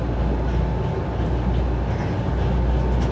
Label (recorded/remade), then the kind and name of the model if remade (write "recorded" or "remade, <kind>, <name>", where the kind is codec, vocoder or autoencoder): recorded